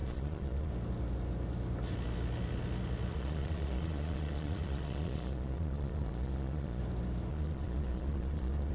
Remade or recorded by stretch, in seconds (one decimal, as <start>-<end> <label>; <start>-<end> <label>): 0.0-0.7 remade; 0.7-3.1 recorded; 3.1-6.8 remade; 6.8-7.3 recorded; 7.3-8.7 remade